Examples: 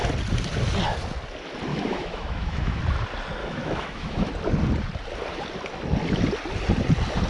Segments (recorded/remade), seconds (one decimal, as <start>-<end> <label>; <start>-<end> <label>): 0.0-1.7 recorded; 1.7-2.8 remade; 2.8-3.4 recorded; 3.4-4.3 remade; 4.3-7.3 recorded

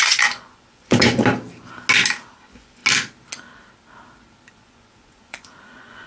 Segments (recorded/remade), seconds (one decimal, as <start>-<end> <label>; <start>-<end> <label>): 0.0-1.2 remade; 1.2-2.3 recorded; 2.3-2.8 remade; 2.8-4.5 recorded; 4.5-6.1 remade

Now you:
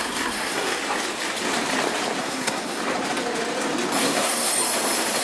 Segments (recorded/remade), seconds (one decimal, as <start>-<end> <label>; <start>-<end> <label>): 0.0-0.8 remade; 0.8-2.2 recorded; 2.2-2.8 remade; 2.8-4.0 recorded; 4.0-4.5 remade; 4.5-5.2 recorded